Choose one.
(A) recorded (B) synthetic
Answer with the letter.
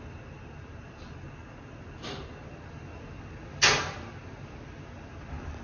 A